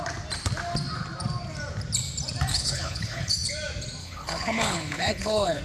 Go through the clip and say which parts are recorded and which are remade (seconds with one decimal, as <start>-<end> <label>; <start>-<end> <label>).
0.0-2.5 recorded; 2.5-3.5 remade; 3.5-4.0 recorded; 4.0-5.6 remade